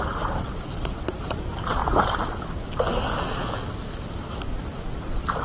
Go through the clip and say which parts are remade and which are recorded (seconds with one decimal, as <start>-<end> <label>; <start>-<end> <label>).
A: 0.0-1.8 remade; 1.8-3.8 recorded; 3.8-5.4 remade